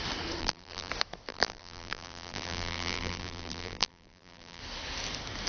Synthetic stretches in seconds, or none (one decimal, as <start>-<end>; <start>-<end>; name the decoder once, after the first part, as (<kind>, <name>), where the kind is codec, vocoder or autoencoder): 0.4-0.9 (vocoder, BigVGAN v2); 1.3-4.6